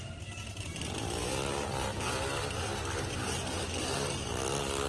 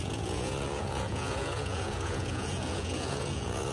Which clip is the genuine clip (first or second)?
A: first